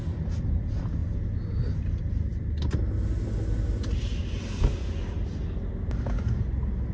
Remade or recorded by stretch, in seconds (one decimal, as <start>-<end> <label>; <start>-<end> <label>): 0.0-6.9 recorded